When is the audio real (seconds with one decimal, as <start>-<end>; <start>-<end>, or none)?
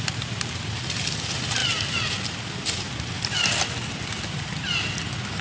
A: 0.0-5.4